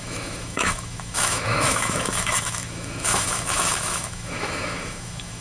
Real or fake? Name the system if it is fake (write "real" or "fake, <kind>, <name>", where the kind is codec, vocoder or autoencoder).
fake, autoencoder, DAC-VAE